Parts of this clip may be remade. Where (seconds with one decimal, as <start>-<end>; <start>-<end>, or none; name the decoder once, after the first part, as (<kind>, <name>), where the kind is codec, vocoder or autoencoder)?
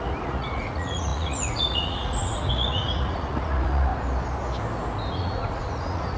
0.0-3.9 (vocoder, Vocos); 5.1-6.2